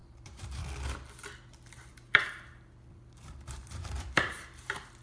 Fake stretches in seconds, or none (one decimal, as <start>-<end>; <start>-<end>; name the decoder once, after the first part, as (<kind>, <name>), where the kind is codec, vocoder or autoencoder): 0.0-0.6 (vocoder, BigVGAN v2); 1.9-5.0